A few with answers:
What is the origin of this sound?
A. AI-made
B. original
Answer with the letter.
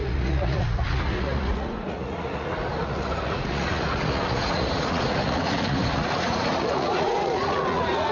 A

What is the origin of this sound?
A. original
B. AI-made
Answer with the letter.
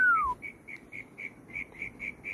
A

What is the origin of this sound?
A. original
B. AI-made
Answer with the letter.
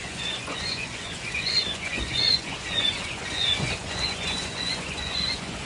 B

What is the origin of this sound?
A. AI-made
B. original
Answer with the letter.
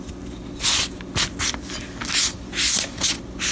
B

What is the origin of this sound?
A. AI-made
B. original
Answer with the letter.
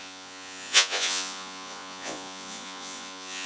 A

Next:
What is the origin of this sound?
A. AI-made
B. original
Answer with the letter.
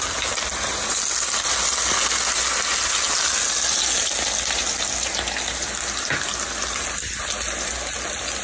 B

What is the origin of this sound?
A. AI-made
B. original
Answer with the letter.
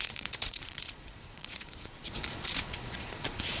A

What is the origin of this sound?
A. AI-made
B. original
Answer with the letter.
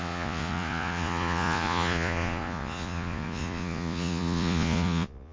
A